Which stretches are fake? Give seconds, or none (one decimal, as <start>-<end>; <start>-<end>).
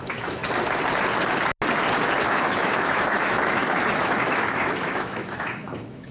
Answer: 0.0-0.4; 2.3-6.1